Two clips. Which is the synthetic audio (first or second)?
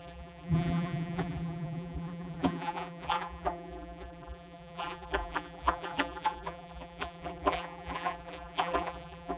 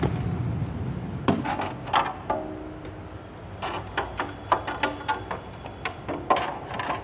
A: first